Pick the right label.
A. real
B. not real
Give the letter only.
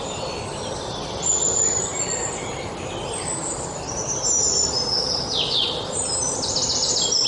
B